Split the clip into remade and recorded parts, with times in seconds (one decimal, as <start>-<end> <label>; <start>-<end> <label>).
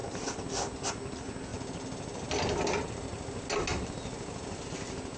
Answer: 0.0-5.2 recorded